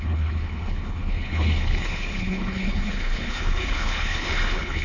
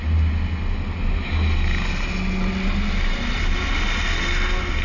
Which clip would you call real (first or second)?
second